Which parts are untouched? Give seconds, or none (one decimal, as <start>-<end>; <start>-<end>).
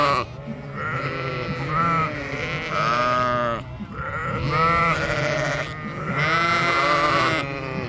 0.0-7.9